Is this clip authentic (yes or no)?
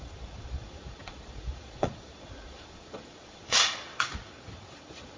no